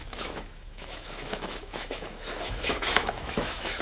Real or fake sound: fake